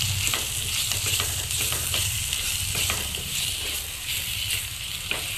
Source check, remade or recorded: remade